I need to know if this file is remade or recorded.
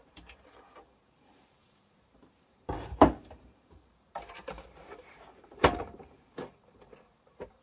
remade